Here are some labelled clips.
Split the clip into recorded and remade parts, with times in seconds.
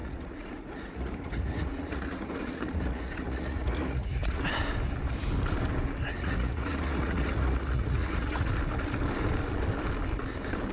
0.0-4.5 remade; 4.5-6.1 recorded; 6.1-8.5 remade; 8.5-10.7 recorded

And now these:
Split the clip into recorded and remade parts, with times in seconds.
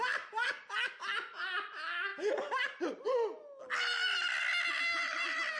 0.0-5.6 recorded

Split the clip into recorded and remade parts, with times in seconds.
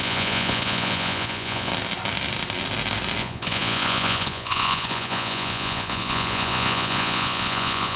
0.0-1.7 remade; 1.7-3.2 recorded; 3.2-8.0 remade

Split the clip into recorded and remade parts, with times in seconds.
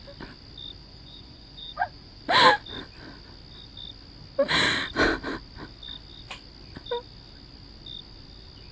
0.0-0.8 recorded; 0.8-2.2 remade; 2.2-8.7 recorded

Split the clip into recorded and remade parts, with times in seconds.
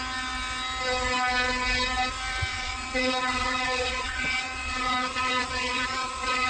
0.0-2.5 recorded; 2.5-6.5 remade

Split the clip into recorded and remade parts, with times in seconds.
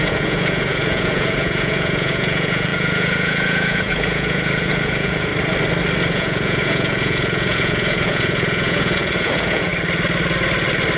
0.0-5.3 remade; 5.3-6.1 recorded; 6.1-9.7 remade; 9.7-11.0 recorded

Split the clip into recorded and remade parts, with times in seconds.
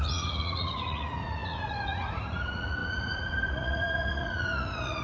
0.0-5.0 remade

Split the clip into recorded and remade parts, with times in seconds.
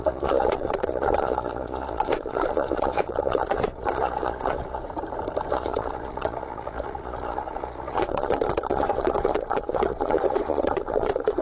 0.0-4.8 remade; 4.8-5.5 recorded; 5.5-11.4 remade